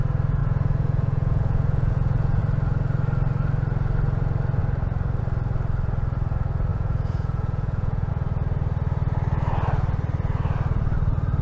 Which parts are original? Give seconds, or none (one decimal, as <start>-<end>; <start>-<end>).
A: 0.0-0.4; 2.4-6.7; 8.1-11.4